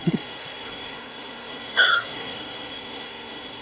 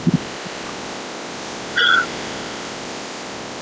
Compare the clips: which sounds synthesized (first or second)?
first